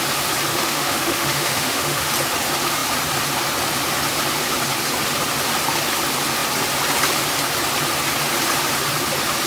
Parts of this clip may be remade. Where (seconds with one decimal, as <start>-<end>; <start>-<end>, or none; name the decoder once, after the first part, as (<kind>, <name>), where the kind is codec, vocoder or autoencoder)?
0.5-2.1 (autoencoder, DAC-VAE)